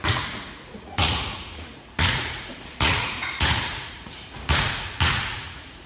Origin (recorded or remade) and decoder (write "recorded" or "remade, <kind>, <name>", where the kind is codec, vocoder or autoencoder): remade, vocoder, Vocos